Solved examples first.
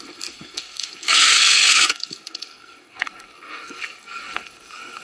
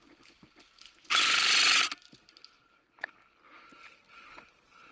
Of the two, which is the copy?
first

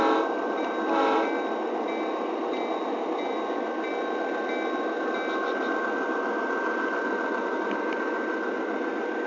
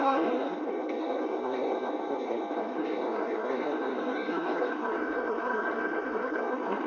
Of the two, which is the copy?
second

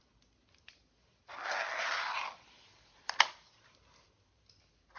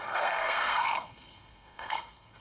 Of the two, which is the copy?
second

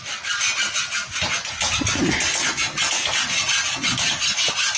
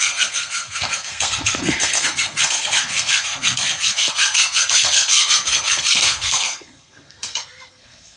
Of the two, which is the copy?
second